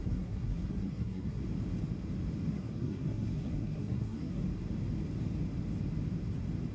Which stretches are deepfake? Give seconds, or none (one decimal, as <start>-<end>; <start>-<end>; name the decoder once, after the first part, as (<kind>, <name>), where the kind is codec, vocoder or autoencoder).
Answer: 0.0-1.4 (codec, SNAC); 2.5-4.4